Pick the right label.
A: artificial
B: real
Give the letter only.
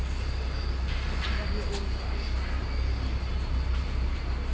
B